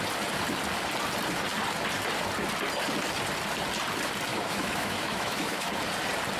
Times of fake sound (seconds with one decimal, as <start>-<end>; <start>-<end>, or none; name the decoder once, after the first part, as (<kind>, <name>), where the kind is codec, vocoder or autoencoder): 4.3-5.7 (autoencoder, DAC-VAE)

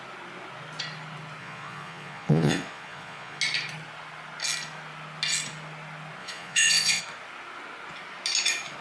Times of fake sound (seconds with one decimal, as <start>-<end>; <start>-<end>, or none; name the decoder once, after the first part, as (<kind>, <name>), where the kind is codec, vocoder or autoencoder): 1.4-3.4 (vocoder, Vocos); 6.2-7.0

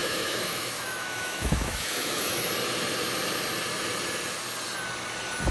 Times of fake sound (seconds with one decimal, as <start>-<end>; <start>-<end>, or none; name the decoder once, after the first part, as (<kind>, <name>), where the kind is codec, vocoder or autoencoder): 0.0-2.5 (autoencoder, DAC-VAE)

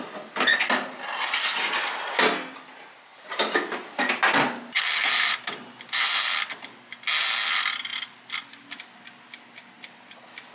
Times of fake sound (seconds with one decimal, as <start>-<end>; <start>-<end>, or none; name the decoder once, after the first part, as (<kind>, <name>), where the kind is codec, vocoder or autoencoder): none

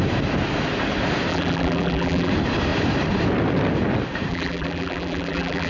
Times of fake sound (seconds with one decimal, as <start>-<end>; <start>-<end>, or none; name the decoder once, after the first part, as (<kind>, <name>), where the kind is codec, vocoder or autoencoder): 1.3-2.3 (vocoder, BigVGAN v2); 4.3-5.7